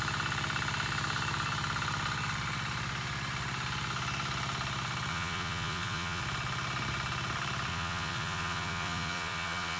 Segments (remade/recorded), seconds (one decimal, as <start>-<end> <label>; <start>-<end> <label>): 0.0-5.1 recorded; 5.1-6.2 remade; 6.2-7.7 recorded; 7.7-9.8 remade